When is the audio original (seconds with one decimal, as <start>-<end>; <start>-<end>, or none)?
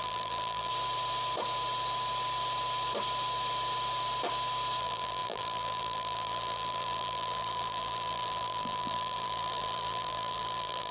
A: 0.7-4.8